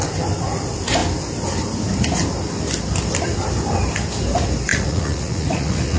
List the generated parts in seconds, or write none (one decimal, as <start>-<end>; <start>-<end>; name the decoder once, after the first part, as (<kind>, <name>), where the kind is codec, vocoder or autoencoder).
4.7-6.0 (vocoder, Vocos)